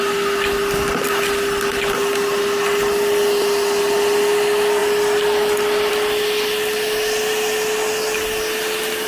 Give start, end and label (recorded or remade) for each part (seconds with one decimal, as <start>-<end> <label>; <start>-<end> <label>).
0.0-9.1 recorded